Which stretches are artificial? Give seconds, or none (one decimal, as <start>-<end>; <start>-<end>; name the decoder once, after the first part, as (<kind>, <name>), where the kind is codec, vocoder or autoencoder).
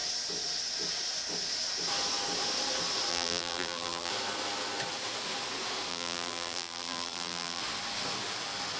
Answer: 3.1-4.1 (vocoder, BigVGAN v2); 5.9-7.6